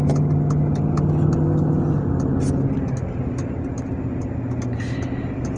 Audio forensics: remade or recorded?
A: recorded